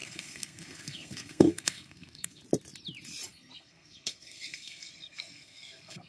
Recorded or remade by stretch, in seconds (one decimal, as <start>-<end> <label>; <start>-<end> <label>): 0.0-2.4 remade; 2.4-3.3 recorded; 3.3-6.1 remade